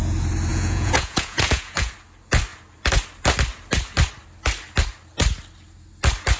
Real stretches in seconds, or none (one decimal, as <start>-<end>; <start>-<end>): 0.0-0.5; 1.9-6.4